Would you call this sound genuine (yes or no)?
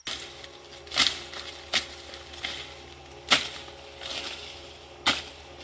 yes